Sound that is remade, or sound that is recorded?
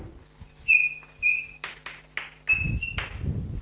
recorded